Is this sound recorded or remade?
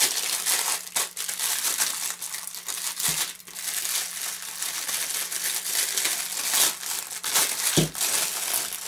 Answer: recorded